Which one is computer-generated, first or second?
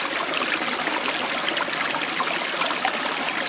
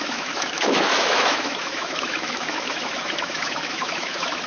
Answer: second